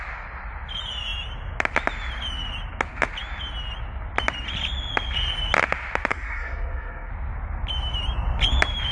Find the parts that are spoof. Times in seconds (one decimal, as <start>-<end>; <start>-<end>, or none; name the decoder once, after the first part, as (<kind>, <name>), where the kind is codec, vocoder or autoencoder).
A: 6.1-7.1 (codec, SNAC)